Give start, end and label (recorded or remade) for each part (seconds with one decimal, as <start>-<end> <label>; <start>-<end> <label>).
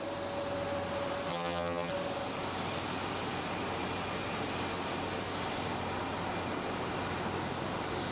0.0-1.3 recorded; 1.3-1.9 remade; 1.9-8.1 recorded